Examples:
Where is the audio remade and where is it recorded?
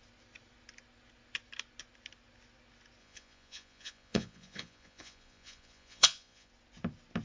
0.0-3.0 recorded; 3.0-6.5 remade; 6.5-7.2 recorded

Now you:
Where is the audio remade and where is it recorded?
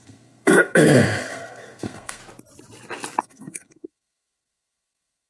0.0-2.2 remade; 2.2-3.2 recorded; 3.2-5.3 remade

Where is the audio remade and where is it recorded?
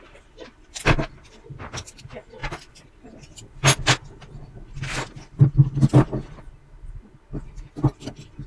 0.0-8.5 recorded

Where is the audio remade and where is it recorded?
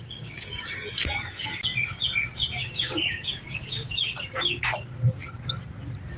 0.0-1.5 remade; 1.5-2.6 recorded; 2.6-4.7 remade; 4.7-6.2 recorded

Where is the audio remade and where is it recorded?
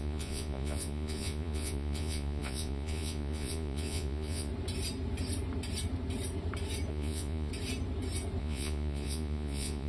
0.0-4.5 remade; 4.5-6.9 recorded; 6.9-7.5 remade; 7.5-8.4 recorded; 8.4-9.9 remade